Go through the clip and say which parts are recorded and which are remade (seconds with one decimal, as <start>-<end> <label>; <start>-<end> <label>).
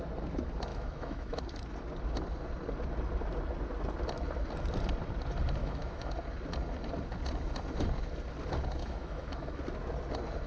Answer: 0.0-0.7 recorded; 0.7-1.4 remade; 1.4-5.6 recorded; 5.6-6.1 remade; 6.1-8.8 recorded; 8.8-9.6 remade; 9.6-10.5 recorded